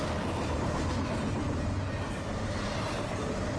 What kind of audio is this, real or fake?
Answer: real